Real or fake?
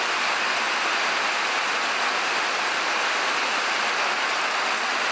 real